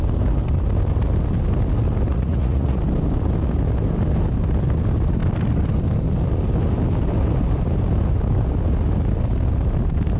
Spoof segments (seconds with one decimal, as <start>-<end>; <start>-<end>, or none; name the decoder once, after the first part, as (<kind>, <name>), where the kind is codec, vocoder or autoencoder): 2.1-2.8 (vocoder, Vocos)